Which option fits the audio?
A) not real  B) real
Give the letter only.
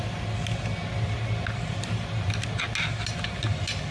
B